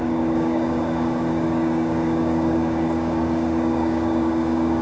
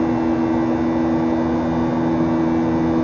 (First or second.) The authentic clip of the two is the second